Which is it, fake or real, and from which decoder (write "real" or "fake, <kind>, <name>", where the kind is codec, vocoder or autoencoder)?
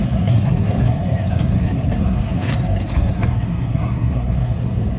fake, codec, SNAC